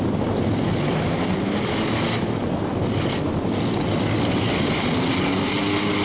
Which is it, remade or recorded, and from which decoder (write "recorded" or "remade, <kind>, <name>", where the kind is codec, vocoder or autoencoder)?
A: recorded